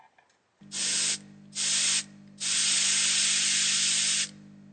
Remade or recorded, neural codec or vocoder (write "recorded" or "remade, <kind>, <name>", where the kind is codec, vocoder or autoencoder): recorded